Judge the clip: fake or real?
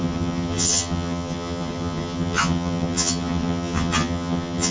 fake